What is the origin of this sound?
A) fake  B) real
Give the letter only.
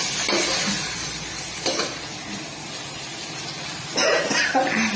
B